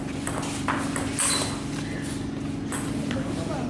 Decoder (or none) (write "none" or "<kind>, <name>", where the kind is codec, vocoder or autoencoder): none